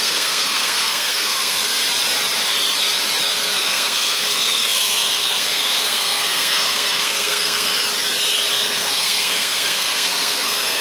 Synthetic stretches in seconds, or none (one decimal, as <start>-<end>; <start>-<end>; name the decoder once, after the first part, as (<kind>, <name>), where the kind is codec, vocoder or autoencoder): 0.0-1.8 (codec, SNAC); 3.3-7.7; 8.5-10.8

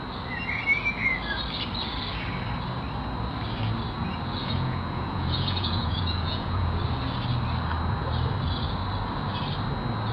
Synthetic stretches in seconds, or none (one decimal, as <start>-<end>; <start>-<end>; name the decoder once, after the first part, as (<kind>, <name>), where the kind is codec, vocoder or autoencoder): 4.4-6.8 (vocoder, Vocos)

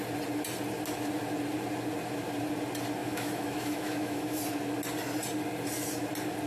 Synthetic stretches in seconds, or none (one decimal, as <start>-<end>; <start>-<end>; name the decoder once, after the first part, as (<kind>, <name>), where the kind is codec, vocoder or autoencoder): 3.0-4.4 (autoencoder, DAC-VAE)

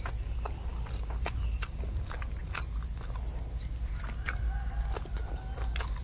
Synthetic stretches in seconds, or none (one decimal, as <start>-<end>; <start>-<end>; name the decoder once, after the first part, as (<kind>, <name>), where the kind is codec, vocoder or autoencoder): none

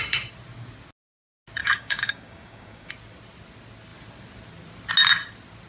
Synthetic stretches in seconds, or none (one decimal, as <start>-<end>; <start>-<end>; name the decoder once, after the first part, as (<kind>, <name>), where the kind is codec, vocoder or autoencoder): 1.6-2.9 (codec, DAC)

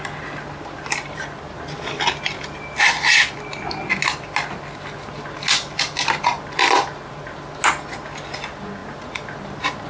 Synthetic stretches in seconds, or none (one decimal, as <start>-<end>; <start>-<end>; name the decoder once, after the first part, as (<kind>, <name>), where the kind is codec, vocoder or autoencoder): none